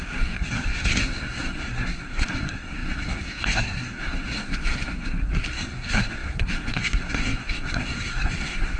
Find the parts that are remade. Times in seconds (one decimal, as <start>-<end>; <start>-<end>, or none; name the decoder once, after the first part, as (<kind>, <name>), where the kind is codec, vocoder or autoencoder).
0.0-8.8 (codec, SNAC)